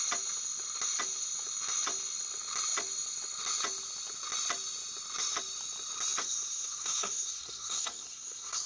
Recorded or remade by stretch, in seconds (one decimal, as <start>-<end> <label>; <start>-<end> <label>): 0.0-6.2 recorded; 6.2-8.7 remade

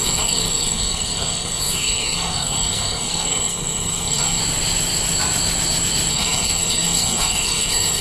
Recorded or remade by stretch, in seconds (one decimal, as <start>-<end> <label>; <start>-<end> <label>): 0.0-4.4 remade; 4.4-6.1 recorded; 6.1-8.0 remade

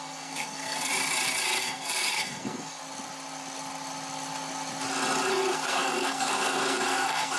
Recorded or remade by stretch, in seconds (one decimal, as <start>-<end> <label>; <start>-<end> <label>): 0.0-0.9 remade; 0.9-1.6 recorded; 1.6-2.8 remade; 2.8-5.5 recorded; 5.5-7.4 remade

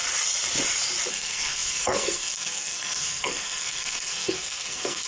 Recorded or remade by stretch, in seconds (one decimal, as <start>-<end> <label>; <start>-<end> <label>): 0.0-1.1 recorded; 1.1-5.1 remade

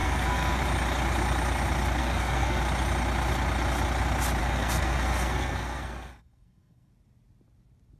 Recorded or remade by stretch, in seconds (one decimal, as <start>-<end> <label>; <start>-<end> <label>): 0.0-0.6 remade; 0.6-2.0 recorded; 2.0-2.6 remade; 2.6-4.4 recorded; 4.4-6.9 remade; 6.9-8.0 recorded

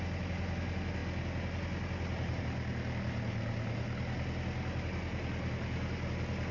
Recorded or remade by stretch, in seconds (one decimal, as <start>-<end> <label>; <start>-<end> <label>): 0.0-6.5 recorded

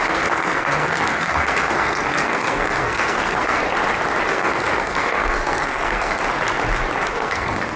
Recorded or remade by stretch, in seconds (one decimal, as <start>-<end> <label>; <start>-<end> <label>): 0.0-3.6 remade; 3.6-4.3 recorded; 4.3-6.2 remade; 6.2-7.1 recorded; 7.1-7.8 remade

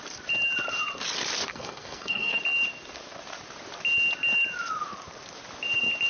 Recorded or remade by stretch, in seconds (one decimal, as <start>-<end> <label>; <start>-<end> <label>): 0.0-1.5 recorded; 1.5-2.4 remade; 2.4-6.1 recorded